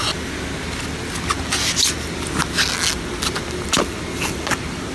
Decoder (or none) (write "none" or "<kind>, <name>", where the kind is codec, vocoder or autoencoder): none